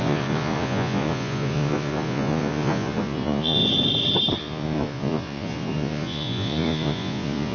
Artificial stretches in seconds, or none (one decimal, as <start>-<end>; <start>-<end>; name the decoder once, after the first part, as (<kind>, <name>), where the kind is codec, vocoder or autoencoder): 0.0-3.6 (vocoder, Vocos); 4.4-7.5